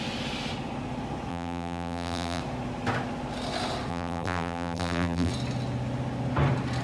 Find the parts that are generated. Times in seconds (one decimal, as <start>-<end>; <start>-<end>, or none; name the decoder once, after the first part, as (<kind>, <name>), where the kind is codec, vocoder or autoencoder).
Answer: 1.3-2.4 (vocoder, BigVGAN v2); 3.9-5.3